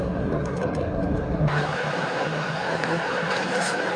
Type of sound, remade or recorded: remade